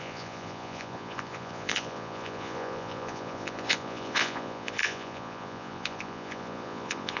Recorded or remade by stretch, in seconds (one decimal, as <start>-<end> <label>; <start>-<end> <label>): 0.0-7.2 remade